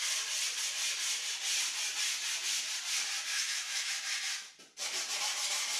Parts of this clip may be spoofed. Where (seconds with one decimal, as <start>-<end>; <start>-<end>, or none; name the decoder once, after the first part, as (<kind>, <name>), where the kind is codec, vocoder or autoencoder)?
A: 3.3-3.9 (autoencoder, DAC-VAE)